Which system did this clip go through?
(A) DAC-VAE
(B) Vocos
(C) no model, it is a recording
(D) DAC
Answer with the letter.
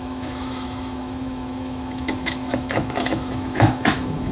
A